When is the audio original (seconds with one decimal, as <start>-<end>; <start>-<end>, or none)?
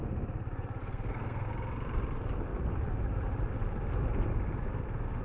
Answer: 0.0-0.8; 1.5-5.2